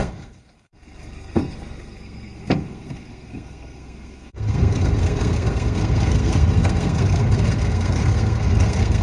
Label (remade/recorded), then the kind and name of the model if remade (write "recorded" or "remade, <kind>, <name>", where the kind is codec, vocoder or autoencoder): remade, codec, SNAC